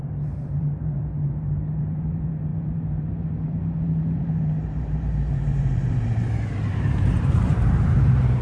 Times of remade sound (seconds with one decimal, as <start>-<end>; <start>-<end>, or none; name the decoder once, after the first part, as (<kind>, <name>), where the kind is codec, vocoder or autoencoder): 0.0-8.4 (vocoder, BigVGAN v2)